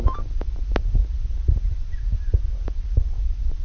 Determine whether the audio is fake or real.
real